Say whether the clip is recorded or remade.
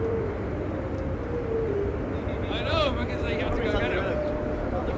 remade